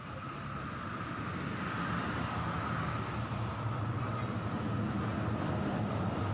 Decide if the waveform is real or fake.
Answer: real